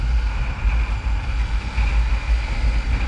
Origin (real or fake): real